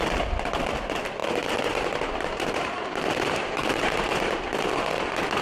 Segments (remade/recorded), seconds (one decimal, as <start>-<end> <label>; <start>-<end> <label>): 0.0-1.2 recorded; 1.2-4.4 remade; 4.4-5.4 recorded